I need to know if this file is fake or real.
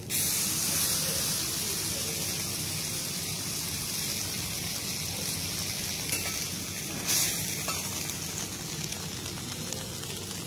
real